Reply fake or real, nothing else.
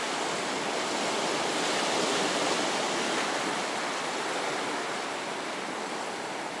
real